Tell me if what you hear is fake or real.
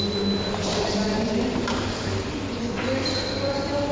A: real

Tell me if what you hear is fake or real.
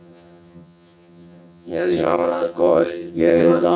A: fake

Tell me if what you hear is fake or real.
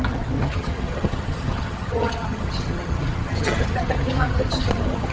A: fake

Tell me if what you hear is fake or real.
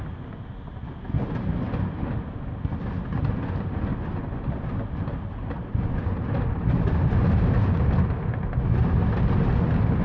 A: real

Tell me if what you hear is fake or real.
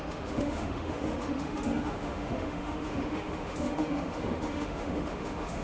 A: fake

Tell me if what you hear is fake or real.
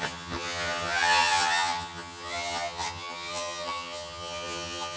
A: fake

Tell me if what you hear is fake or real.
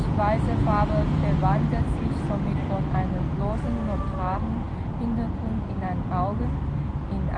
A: real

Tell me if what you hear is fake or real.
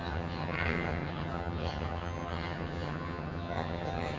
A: fake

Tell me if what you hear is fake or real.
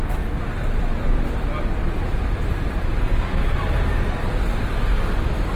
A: real